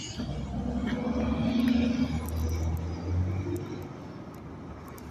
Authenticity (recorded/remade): recorded